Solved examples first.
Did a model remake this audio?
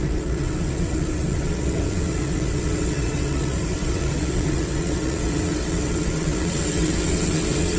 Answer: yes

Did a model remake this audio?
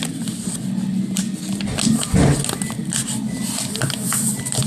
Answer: no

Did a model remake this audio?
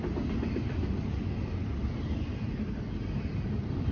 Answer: no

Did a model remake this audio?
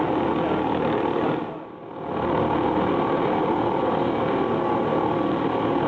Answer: no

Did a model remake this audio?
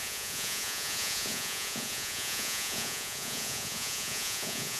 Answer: yes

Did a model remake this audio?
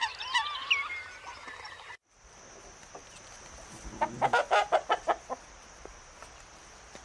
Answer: no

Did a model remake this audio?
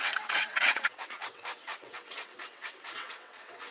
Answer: yes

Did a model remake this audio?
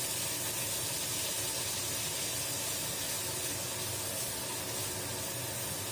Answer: no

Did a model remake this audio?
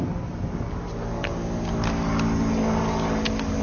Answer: no